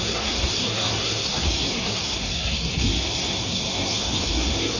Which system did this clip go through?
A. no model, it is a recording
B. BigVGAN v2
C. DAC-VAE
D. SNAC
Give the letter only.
D